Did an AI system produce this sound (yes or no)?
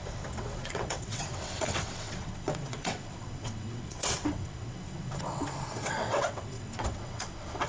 yes